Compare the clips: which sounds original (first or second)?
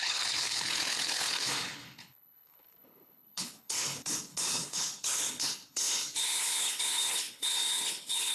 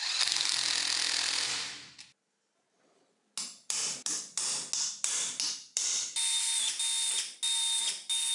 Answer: second